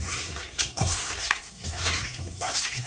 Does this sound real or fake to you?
fake